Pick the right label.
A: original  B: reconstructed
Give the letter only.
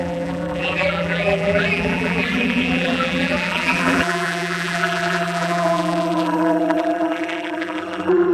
B